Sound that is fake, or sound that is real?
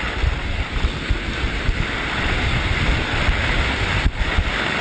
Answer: real